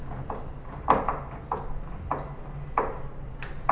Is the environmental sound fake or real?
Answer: real